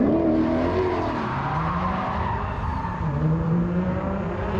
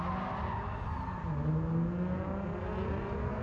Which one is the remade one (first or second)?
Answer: first